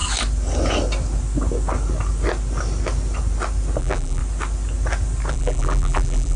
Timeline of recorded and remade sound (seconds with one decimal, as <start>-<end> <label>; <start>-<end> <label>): 0.0-3.8 recorded; 3.8-4.2 remade; 4.2-5.3 recorded; 5.3-6.4 remade